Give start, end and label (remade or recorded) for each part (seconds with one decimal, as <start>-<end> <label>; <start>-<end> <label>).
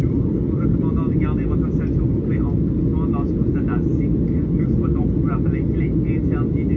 0.0-6.8 recorded